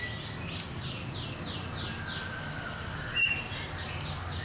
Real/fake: real